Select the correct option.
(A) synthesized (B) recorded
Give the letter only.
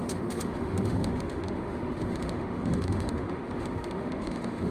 A